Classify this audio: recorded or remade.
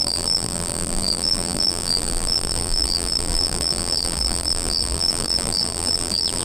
remade